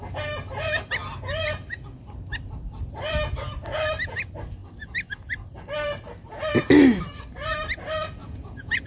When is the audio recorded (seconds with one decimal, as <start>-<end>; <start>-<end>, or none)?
0.0-8.2